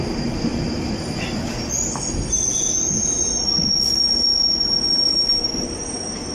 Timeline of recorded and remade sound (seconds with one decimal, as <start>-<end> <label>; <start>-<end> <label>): 0.0-6.3 recorded